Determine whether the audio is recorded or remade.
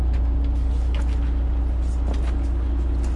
recorded